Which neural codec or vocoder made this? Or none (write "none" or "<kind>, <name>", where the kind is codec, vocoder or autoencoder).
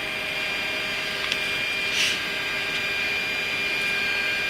none